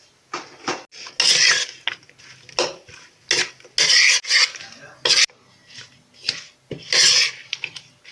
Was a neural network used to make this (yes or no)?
no